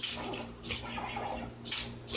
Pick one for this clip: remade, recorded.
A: recorded